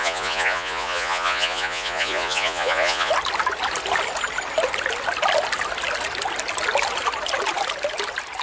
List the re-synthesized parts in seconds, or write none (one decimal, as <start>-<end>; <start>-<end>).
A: 0.0-3.1